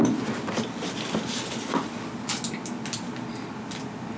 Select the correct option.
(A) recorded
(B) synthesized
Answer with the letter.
A